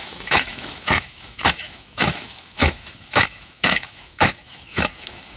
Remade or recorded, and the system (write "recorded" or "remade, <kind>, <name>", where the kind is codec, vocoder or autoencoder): remade, autoencoder, DAC-VAE